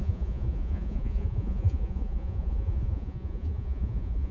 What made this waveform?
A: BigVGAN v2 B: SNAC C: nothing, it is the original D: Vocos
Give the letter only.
D